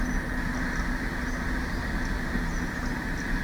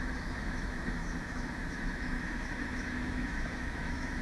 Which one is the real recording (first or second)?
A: first